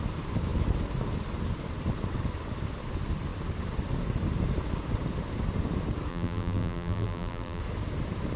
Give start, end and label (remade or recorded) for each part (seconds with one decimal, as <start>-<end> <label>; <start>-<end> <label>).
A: 0.0-6.1 recorded; 6.1-7.6 remade; 7.6-8.4 recorded